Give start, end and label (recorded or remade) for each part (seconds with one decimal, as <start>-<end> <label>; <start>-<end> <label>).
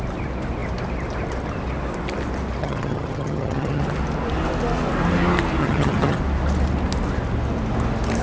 0.0-2.6 recorded; 2.6-3.8 remade; 3.8-5.6 recorded; 5.6-6.2 remade; 6.2-8.2 recorded